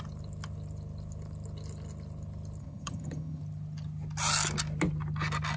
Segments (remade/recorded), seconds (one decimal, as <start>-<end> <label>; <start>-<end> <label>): 0.0-2.6 recorded; 2.6-3.4 remade; 3.4-5.6 recorded